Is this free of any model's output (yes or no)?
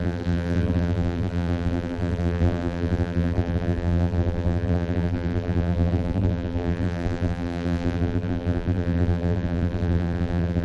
no